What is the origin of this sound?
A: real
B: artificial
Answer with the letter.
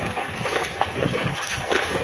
B